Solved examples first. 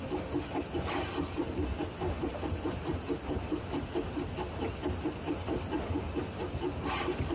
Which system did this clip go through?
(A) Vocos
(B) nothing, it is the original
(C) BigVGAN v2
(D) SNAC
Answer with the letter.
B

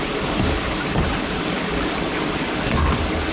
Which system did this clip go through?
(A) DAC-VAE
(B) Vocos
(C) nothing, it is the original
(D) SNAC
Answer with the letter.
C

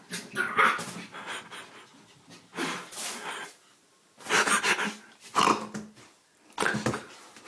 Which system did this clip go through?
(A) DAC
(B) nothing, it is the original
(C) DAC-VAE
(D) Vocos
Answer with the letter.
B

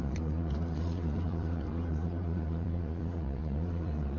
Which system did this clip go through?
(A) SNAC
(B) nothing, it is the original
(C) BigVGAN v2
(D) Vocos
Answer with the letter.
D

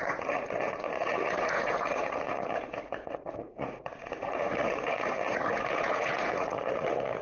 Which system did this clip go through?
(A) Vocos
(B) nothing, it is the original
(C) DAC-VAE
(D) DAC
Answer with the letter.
A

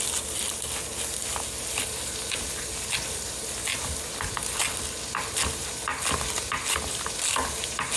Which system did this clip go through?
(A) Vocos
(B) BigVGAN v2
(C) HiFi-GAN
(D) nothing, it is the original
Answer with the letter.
D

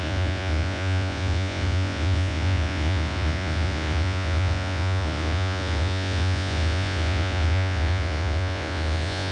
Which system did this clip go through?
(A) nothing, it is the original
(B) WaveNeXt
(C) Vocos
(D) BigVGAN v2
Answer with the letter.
C